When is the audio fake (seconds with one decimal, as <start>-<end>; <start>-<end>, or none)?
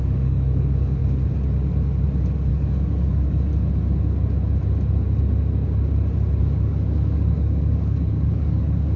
0.0-1.0; 2.5-3.5; 6.4-9.0